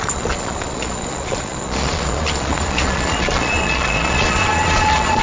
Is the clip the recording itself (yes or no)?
no